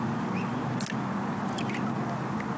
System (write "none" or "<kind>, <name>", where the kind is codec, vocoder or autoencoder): none